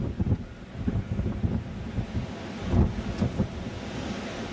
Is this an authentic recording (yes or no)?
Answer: yes